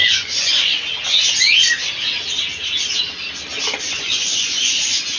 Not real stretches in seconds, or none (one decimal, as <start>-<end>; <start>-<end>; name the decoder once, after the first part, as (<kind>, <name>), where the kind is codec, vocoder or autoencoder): 0.0-0.7 (vocoder, Vocos); 3.8-5.2